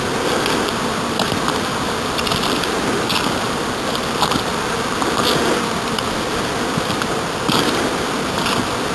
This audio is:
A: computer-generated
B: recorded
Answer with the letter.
B